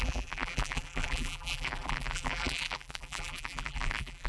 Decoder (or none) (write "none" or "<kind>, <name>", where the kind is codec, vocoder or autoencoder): vocoder, BigVGAN v2